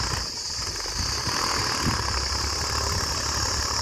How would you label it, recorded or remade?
remade